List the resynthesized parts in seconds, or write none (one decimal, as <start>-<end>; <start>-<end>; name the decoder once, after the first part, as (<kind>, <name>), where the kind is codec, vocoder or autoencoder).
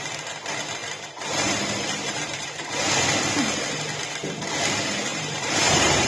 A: 0.8-2.7 (vocoder, BigVGAN v2); 5.1-6.1